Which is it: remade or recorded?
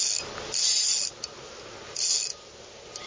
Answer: recorded